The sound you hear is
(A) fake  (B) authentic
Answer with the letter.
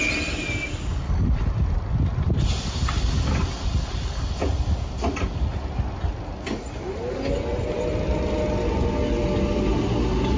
B